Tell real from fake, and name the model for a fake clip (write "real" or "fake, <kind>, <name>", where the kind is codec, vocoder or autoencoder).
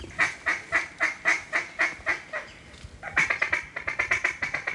real